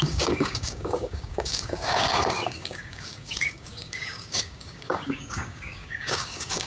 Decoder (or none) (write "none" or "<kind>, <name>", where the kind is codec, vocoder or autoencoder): codec, DAC